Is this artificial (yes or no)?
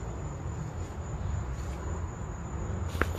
no